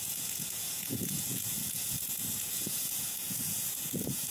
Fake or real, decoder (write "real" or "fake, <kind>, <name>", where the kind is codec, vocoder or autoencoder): fake, vocoder, Vocos